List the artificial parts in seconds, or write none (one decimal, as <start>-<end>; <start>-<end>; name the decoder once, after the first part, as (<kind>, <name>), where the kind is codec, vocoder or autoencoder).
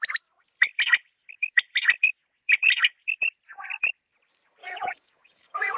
4.6-5.8 (codec, DAC)